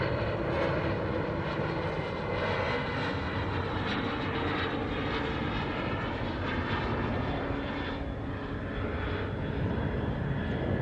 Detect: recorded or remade recorded